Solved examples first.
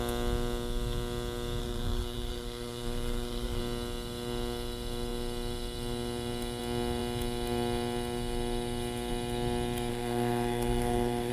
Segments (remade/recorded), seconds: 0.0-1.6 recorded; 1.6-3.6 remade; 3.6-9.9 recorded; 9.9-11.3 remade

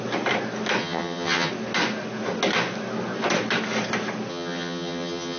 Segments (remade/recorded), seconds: 0.0-0.8 recorded; 0.8-1.5 remade; 1.5-4.3 recorded; 4.3-5.4 remade

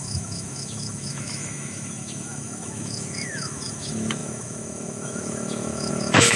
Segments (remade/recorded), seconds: 0.0-6.4 remade

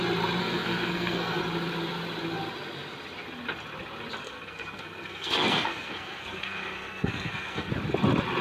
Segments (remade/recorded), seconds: 0.0-0.4 recorded; 0.4-1.4 remade; 1.4-4.2 recorded; 4.2-7.7 remade; 7.7-8.4 recorded

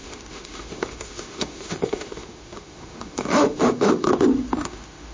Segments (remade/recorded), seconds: 0.0-5.1 remade

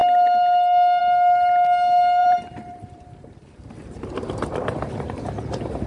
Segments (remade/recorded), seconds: 0.0-2.2 recorded; 2.2-5.9 remade